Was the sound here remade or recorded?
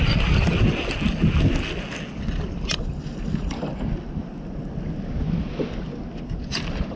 recorded